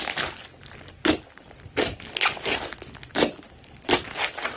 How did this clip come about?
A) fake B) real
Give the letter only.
B